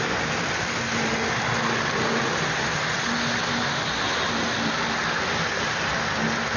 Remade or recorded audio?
recorded